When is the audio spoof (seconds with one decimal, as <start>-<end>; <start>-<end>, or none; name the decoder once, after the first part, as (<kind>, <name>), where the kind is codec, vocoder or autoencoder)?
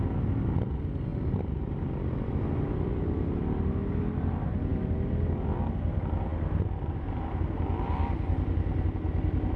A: none